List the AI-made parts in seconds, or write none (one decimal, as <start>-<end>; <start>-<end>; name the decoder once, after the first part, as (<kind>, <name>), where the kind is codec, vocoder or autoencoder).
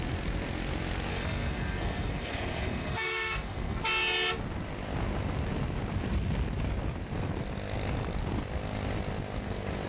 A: 1.1-3.8 (codec, SNAC)